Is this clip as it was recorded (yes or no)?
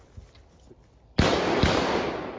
yes